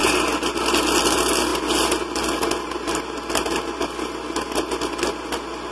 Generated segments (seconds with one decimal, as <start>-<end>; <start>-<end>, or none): none